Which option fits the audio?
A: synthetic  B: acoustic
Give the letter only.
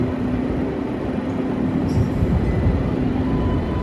A